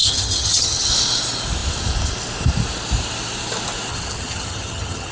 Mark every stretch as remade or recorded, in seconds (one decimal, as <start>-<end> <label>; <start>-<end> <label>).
0.0-0.9 remade; 0.9-3.9 recorded; 3.9-5.1 remade